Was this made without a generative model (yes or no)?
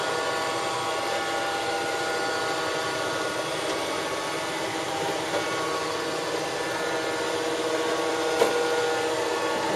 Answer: yes